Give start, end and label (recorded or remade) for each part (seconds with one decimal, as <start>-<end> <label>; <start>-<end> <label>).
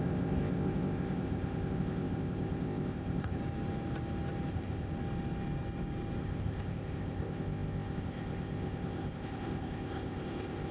0.0-3.4 remade; 3.4-4.5 recorded; 4.5-4.9 remade; 4.9-6.2 recorded; 6.2-10.7 remade